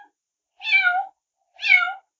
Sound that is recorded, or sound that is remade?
recorded